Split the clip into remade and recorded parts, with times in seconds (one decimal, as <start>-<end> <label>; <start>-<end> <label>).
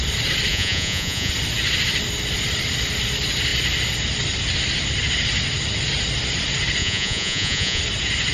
0.0-0.5 recorded; 0.5-1.3 remade; 1.3-6.8 recorded; 6.8-7.8 remade; 7.8-8.3 recorded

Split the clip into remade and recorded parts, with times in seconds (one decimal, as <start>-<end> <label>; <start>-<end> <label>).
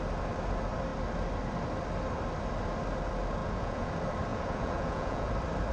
0.0-3.4 recorded; 3.4-3.9 remade; 3.9-4.3 recorded; 4.3-5.3 remade; 5.3-5.7 recorded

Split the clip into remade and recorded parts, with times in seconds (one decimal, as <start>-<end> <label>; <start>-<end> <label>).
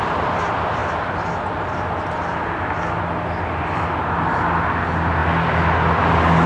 0.0-6.5 recorded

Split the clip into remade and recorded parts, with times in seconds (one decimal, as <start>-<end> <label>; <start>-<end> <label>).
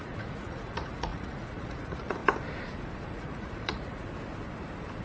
0.0-2.2 remade; 2.2-3.0 recorded; 3.0-4.0 remade; 4.0-5.0 recorded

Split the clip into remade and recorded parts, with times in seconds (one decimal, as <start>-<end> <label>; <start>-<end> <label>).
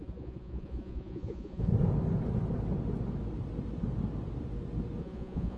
0.0-1.7 remade; 1.7-5.0 recorded; 5.0-5.6 remade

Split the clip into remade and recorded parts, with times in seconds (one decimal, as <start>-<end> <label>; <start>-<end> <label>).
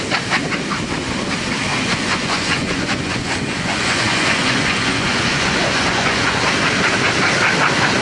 0.0-1.7 recorded; 1.7-6.5 remade; 6.5-8.0 recorded